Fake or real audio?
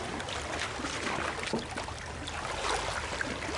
real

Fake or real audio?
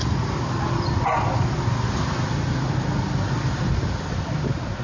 real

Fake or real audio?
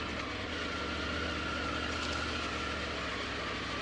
real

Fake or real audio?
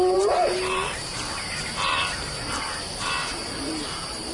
fake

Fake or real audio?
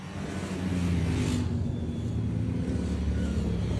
real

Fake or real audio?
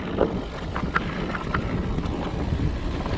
real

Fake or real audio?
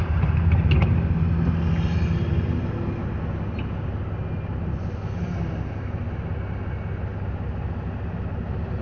real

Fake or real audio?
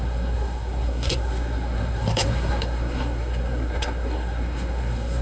fake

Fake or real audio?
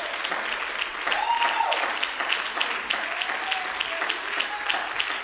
real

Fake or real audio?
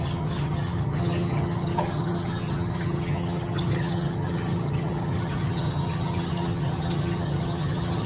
fake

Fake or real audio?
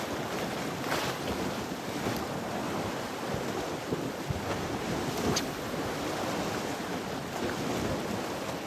real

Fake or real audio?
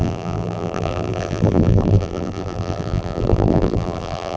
fake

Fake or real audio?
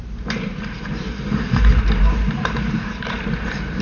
fake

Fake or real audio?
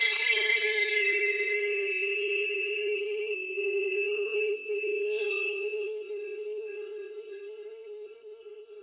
fake